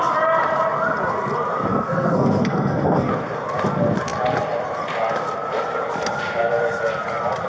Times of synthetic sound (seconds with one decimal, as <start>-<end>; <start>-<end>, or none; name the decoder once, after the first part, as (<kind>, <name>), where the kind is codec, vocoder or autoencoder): 1.7-3.1 (codec, SNAC)